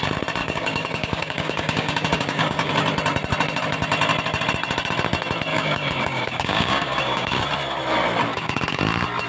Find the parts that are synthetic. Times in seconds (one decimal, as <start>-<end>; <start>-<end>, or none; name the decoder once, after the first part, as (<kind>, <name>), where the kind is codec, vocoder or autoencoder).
0.4-2.7 (codec, DAC); 5.5-7.4; 8.3-8.8